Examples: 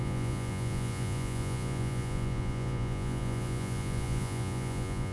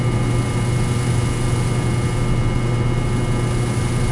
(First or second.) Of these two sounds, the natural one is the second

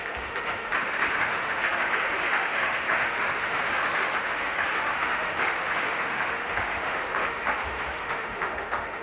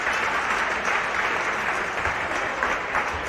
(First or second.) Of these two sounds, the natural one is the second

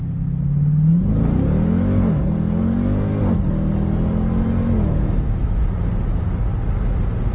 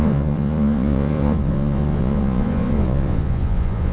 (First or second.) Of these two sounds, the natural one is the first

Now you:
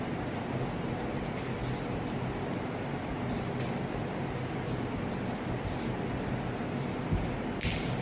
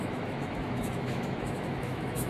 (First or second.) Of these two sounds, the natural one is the first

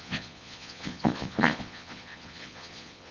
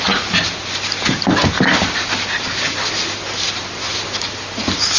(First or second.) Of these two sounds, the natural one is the second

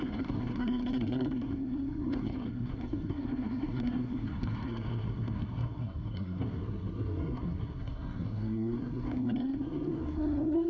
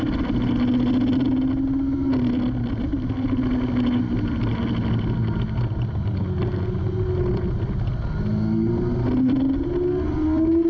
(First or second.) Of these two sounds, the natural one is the second